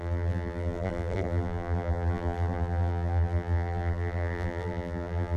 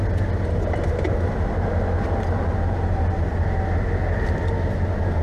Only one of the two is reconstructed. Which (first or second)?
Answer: first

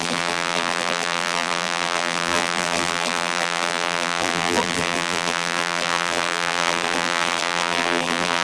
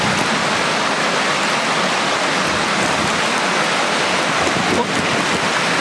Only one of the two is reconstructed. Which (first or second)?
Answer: first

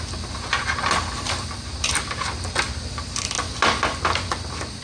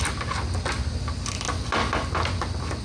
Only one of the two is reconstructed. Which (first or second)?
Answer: first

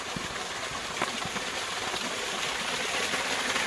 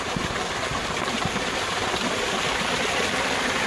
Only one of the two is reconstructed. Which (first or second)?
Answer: second